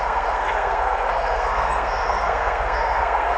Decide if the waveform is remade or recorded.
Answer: remade